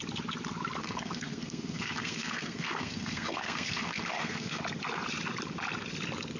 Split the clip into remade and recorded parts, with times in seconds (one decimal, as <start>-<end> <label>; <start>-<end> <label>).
0.0-0.8 recorded; 0.8-4.6 remade; 4.6-6.4 recorded